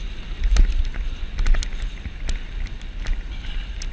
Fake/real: real